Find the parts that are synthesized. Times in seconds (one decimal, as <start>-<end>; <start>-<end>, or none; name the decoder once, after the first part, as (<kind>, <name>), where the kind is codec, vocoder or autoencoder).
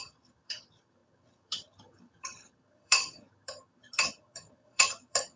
0.0-5.4 (vocoder, HiFi-GAN)